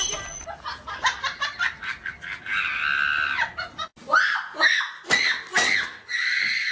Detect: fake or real real